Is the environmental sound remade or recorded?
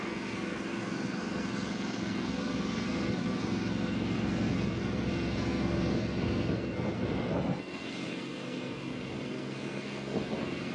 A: remade